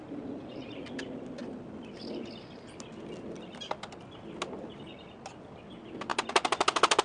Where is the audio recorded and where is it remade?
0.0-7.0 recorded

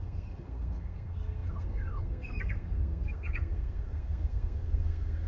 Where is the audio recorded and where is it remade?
0.0-5.3 remade

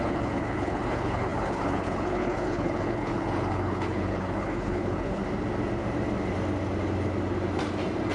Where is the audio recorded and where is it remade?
0.0-5.2 remade; 5.2-8.1 recorded

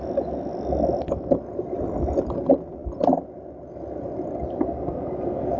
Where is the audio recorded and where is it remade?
0.0-5.6 recorded

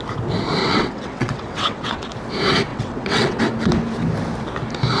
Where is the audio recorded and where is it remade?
0.0-0.6 recorded; 0.6-2.1 remade; 2.1-2.7 recorded; 2.7-3.4 remade; 3.4-5.0 recorded

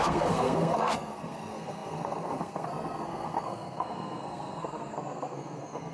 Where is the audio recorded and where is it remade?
0.0-5.9 remade

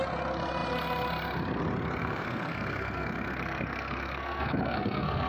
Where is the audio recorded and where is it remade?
0.0-2.0 recorded; 2.0-5.3 remade